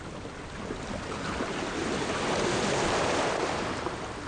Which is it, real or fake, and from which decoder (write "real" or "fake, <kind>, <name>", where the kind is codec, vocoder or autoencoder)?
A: real